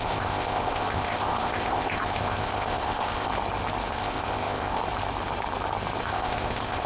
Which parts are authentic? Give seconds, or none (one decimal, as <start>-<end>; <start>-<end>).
3.3-3.9; 4.8-6.0